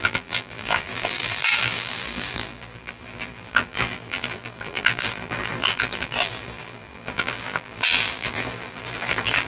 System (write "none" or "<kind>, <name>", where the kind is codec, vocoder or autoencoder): vocoder, BigVGAN v2